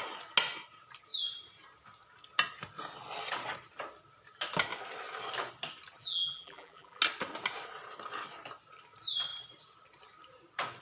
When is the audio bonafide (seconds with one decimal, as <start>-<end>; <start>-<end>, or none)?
0.0-6.0; 7.0-10.8